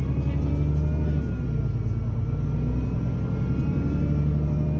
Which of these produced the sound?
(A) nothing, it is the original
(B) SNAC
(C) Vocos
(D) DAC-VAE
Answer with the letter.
A